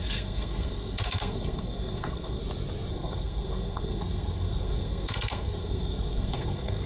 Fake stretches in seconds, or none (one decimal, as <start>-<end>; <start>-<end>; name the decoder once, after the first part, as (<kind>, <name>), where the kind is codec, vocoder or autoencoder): 0.0-2.4 (codec, SNAC); 2.9-6.9